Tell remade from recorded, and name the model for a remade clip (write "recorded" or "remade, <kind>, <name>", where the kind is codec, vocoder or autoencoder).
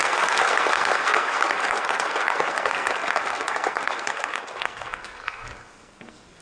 remade, codec, SNAC